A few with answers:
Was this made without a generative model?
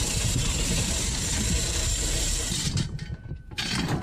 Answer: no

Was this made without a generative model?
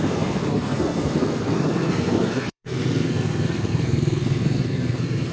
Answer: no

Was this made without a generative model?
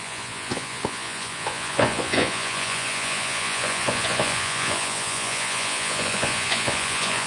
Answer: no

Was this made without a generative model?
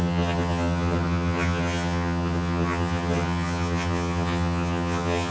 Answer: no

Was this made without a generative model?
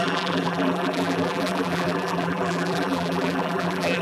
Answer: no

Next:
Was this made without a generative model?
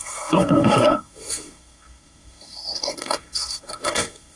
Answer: no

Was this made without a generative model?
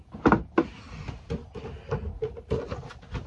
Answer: yes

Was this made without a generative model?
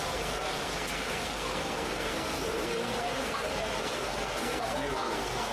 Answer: no